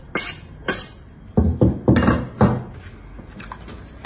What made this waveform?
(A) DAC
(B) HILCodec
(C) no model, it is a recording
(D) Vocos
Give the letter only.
C